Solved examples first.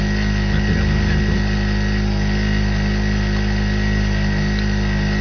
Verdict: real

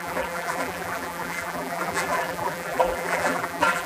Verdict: fake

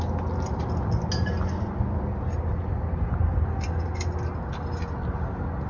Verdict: real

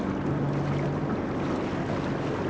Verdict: real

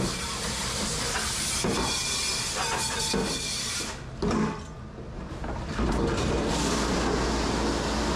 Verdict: real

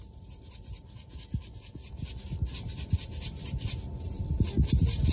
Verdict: real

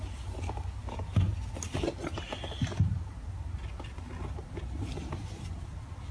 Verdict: fake